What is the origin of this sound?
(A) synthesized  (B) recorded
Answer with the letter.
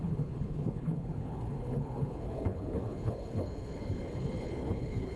A